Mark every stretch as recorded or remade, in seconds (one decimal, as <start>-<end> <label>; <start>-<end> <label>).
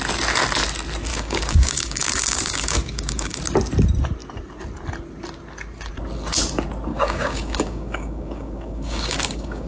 0.0-1.1 recorded; 1.1-3.4 remade; 3.4-6.9 recorded; 6.9-9.7 remade